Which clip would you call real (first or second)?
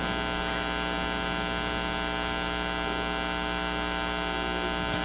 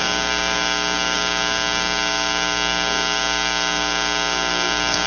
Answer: first